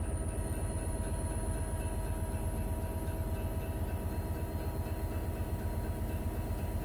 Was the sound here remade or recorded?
recorded